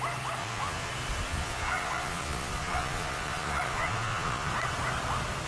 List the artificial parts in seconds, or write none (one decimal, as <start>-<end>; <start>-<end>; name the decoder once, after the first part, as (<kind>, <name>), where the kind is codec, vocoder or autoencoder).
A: 0.4-0.9 (vocoder, Vocos); 1.3-4.5